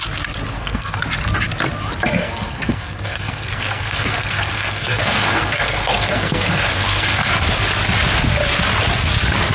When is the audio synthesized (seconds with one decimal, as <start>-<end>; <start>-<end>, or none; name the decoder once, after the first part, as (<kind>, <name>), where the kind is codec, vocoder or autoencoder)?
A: 0.5-1.0 (codec, SNAC); 2.2-7.4